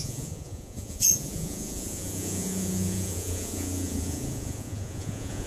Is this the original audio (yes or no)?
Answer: no